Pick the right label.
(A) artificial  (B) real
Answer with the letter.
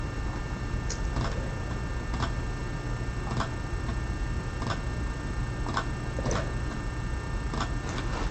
B